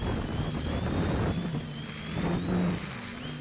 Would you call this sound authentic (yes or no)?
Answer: yes